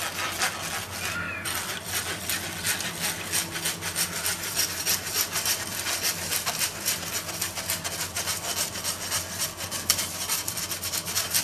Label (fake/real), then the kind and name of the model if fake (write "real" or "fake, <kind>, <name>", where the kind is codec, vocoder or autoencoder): real